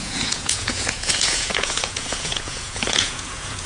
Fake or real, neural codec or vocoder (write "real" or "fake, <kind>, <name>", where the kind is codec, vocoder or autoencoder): fake, vocoder, Vocos